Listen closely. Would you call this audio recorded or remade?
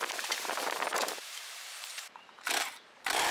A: remade